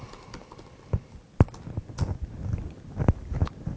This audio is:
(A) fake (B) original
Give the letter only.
B